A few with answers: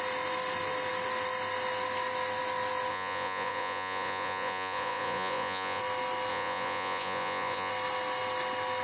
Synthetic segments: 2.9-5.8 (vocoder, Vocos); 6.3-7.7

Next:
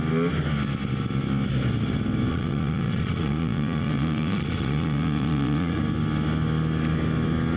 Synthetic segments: 2.3-5.8 (vocoder, Vocos)

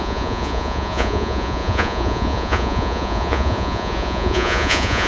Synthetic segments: 0.0-5.1 (vocoder, Vocos)

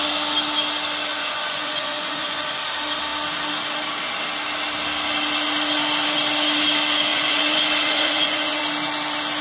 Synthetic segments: 1.1-2.7 (vocoder, Vocos); 7.1-8.6

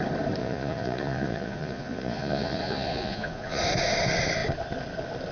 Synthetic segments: 0.4-3.6 (vocoder, Vocos)

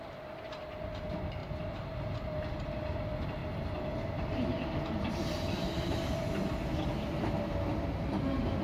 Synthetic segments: none

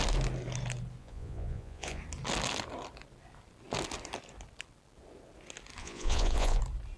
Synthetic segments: 1.0-2.0 (vocoder, Vocos); 5.8-6.6